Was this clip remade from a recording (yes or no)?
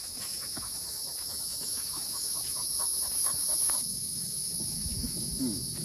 yes